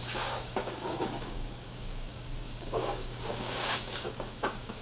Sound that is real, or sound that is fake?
fake